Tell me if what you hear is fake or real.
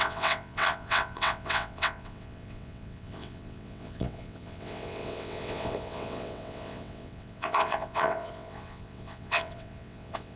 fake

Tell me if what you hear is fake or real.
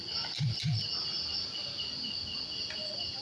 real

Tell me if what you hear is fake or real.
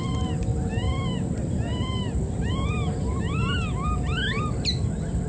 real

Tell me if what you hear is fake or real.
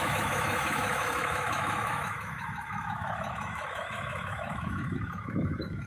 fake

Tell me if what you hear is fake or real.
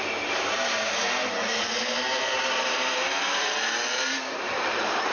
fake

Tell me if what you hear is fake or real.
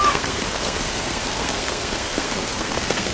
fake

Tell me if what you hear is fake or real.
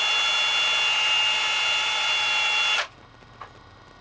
real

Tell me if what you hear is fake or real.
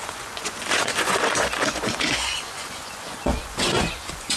fake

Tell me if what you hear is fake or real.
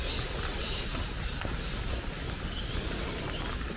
real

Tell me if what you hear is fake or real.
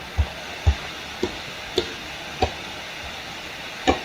real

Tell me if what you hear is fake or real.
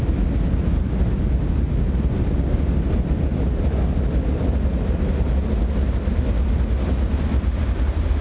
real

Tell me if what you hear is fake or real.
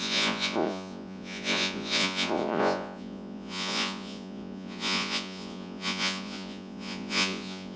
fake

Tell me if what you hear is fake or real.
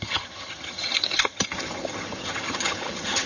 fake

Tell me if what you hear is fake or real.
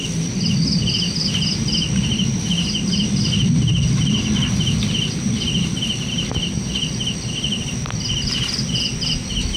real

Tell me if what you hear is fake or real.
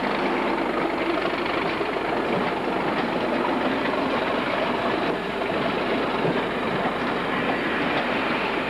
real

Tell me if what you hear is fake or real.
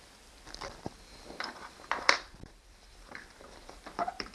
fake